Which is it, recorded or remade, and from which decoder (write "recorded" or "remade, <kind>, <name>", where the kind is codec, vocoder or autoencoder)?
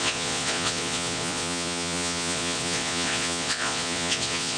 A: remade, vocoder, Vocos